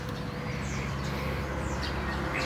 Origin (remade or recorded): recorded